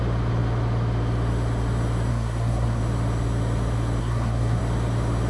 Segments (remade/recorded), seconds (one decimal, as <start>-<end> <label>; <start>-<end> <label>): 0.0-2.1 recorded; 2.1-2.8 remade; 2.8-4.0 recorded; 4.0-4.6 remade; 4.6-5.3 recorded